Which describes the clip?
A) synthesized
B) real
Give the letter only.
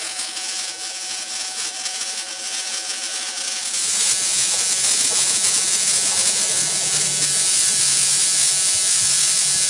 A